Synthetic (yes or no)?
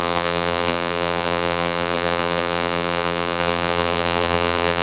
yes